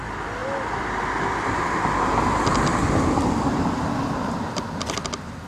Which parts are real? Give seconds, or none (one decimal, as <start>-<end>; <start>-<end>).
0.0-5.5